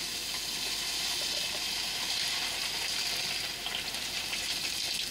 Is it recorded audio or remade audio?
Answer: recorded